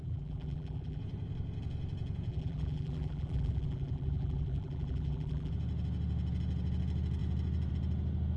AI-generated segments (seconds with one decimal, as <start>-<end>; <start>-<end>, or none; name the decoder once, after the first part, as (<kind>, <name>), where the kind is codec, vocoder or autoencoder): 0.0-1.0 (vocoder, BigVGAN v2); 2.3-5.5